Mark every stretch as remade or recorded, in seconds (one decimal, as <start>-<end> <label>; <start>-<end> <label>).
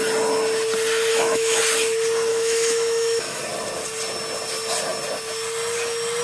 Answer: 0.0-1.1 recorded; 1.1-1.6 remade; 1.6-2.3 recorded; 2.3-3.4 remade; 3.4-6.2 recorded